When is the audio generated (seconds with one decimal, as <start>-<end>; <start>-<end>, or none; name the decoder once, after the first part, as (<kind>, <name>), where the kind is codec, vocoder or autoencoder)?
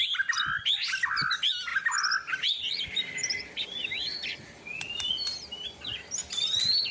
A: 1.7-5.1 (vocoder, BigVGAN v2)